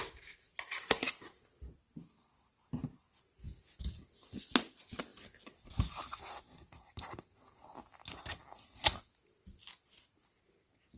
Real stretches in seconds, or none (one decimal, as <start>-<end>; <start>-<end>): 0.0-11.0